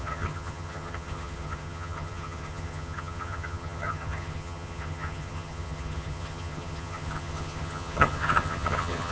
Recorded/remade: remade